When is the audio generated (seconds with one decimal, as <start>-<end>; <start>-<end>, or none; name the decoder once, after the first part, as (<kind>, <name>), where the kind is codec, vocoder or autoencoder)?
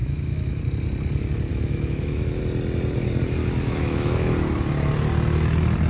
0.0-0.6 (autoencoder, DAC-VAE); 1.5-2.4; 3.4-4.3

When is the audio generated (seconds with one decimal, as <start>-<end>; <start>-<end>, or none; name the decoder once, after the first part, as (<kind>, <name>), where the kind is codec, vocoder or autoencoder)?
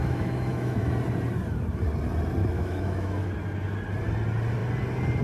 0.0-0.9 (autoencoder, DAC-VAE); 2.4-3.3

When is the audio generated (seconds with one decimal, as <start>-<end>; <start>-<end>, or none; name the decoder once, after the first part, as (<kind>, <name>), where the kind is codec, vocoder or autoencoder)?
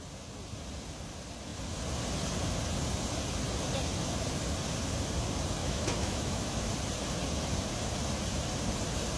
5.6-6.7 (autoencoder, DAC-VAE)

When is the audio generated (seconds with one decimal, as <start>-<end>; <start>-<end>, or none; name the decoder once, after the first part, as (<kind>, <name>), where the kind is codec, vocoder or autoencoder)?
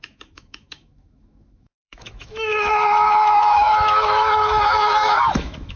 0.0-5.8 (autoencoder, DAC-VAE)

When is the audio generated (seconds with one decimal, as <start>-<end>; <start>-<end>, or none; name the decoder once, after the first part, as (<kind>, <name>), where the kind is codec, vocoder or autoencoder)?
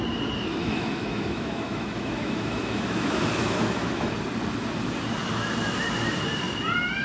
0.6-4.1 (autoencoder, DAC-VAE)